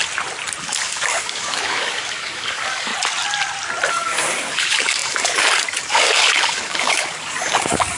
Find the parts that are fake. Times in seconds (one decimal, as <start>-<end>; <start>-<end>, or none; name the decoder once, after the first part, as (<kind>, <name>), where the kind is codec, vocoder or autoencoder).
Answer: 0.6-2.9 (codec, DAC); 3.9-8.0